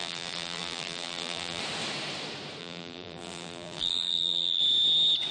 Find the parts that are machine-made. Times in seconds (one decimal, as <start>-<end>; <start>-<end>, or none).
0.0-1.6; 2.6-4.6